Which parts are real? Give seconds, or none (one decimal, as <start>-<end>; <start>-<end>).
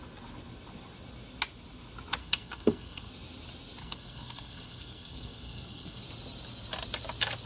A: 0.0-2.2; 3.1-3.8; 6.0-7.5